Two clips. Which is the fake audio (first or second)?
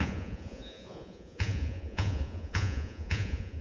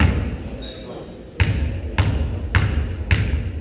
first